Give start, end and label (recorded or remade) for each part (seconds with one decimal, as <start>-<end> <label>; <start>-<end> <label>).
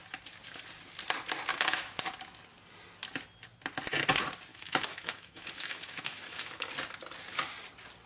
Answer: 0.0-1.5 recorded; 1.5-2.1 remade; 2.1-4.5 recorded; 4.5-6.7 remade; 6.7-8.1 recorded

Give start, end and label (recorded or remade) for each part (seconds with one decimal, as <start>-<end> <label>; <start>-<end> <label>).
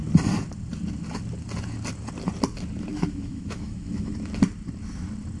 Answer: 0.0-2.9 recorded; 2.9-4.1 remade; 4.1-5.4 recorded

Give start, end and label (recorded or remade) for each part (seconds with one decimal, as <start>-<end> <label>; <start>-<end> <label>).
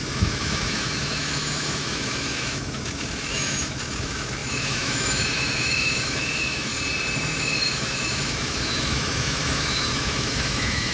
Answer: 0.0-6.7 remade; 6.7-7.2 recorded; 7.2-10.9 remade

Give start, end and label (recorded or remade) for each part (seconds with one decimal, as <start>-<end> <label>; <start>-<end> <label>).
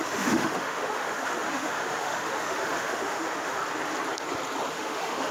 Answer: 0.0-3.6 remade; 3.6-4.7 recorded; 4.7-5.3 remade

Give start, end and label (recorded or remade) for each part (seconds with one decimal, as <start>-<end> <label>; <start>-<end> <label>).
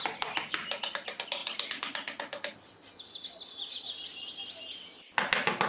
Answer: 0.0-5.7 recorded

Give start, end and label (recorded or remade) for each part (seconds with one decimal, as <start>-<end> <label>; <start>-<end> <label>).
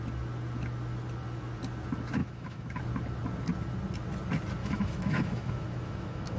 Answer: 0.0-2.2 recorded; 2.2-2.8 remade; 2.8-4.6 recorded; 4.6-6.4 remade